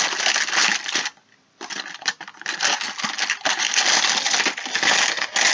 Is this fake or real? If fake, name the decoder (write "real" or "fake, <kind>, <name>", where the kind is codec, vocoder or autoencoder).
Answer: real